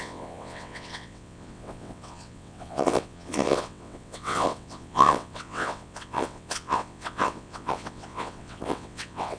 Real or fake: fake